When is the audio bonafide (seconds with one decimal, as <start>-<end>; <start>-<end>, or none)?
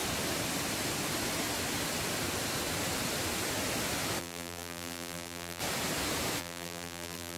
0.0-4.2; 5.6-6.4